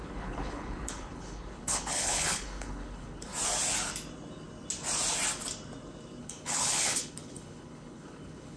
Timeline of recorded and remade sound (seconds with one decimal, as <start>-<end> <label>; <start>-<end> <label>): 0.0-3.3 remade; 3.3-6.2 recorded; 6.2-8.6 remade